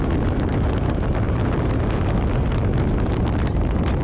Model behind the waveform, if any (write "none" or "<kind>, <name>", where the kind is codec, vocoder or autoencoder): none